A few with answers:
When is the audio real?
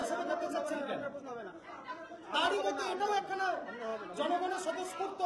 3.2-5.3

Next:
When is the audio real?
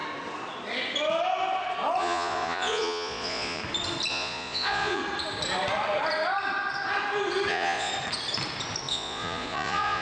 0.0-2.0; 3.6-4.1; 5.0-7.5; 7.9-8.9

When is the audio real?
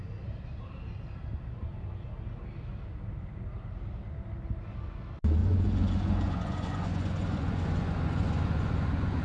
0.0-5.4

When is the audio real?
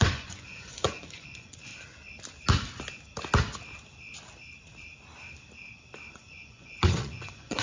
1.7-6.1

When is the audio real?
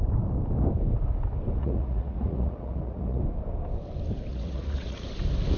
0.0-1.6; 3.2-4.3; 5.1-5.6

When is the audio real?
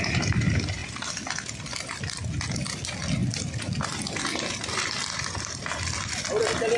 0.0-6.8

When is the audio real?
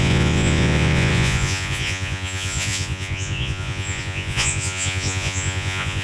none